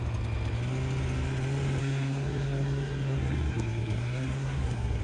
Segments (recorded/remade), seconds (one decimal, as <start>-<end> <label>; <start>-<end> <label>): 0.0-1.8 recorded; 1.8-5.0 remade